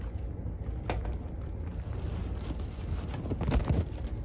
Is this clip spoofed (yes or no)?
no